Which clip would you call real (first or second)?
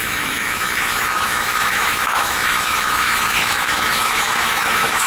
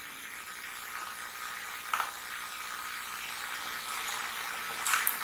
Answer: second